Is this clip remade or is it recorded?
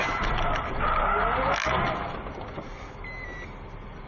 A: recorded